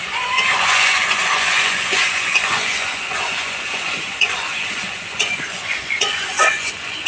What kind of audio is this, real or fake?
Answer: fake